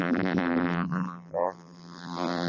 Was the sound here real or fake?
fake